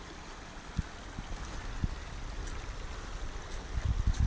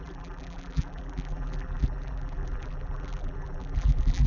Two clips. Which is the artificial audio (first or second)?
second